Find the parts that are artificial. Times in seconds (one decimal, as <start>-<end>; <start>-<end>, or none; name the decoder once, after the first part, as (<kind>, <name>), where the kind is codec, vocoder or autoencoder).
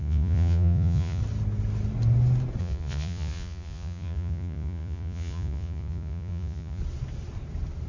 0.0-1.2 (vocoder, Vocos); 2.6-6.8